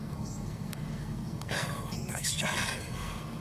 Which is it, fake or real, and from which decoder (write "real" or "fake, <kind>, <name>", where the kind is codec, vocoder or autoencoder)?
fake, codec, SNAC